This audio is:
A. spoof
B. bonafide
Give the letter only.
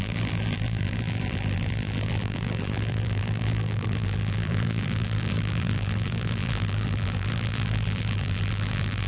A